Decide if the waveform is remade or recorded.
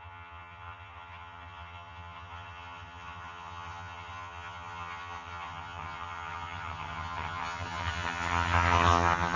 remade